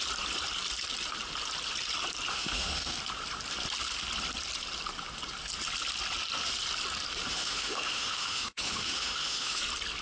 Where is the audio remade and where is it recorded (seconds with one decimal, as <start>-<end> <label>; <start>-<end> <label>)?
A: 0.0-2.3 recorded; 2.3-3.0 remade; 3.0-7.3 recorded; 7.3-9.6 remade; 9.6-10.0 recorded